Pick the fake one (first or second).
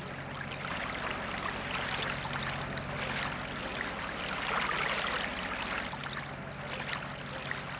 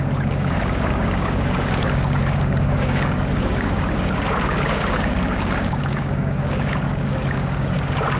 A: second